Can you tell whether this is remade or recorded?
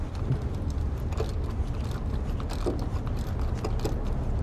recorded